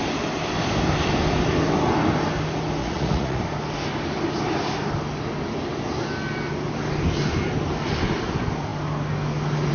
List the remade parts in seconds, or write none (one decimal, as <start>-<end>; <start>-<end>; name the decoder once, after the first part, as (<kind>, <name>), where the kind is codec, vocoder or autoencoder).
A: 2.8-3.4 (vocoder, Vocos)